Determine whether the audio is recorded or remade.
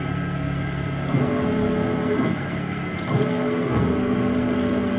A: remade